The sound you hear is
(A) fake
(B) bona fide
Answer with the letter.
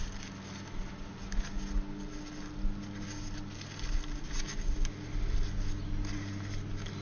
B